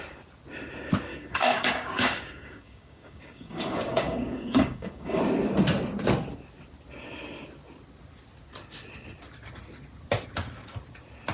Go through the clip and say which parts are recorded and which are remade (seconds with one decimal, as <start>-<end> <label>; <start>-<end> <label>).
0.0-1.1 recorded; 1.1-5.2 remade; 5.2-11.3 recorded